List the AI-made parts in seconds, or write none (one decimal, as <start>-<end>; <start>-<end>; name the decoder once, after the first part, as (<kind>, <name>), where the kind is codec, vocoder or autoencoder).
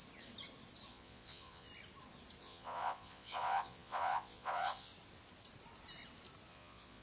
0.9-1.7 (vocoder, Vocos); 2.4-4.9; 6.5-7.0